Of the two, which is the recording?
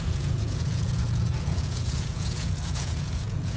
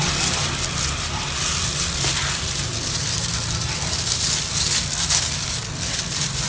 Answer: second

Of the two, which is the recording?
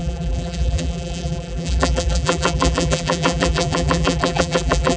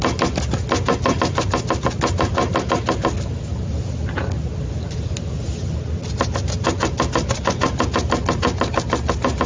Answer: second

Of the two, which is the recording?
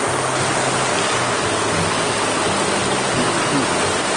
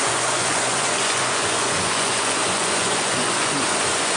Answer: first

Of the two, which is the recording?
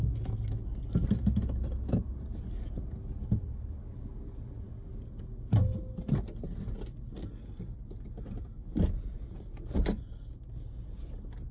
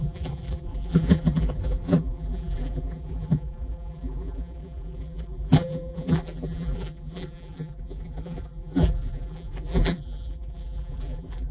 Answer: first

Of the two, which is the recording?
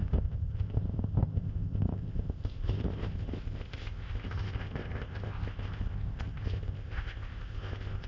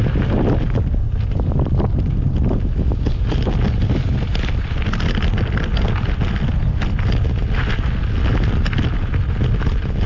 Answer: second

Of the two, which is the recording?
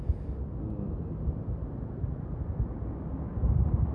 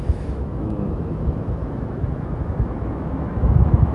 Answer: first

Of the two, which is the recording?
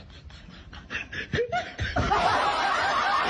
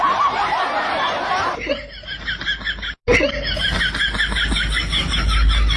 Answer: second